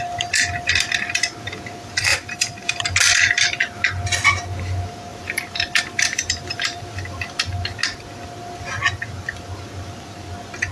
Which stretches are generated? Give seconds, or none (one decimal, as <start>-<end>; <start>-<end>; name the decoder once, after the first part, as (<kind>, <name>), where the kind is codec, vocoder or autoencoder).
2.1-2.7 (vocoder, BigVGAN v2); 5.1-7.4